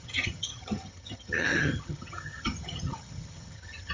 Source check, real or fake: fake